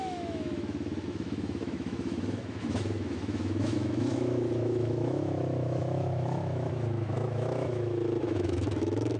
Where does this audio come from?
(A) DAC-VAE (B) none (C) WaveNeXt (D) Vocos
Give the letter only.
A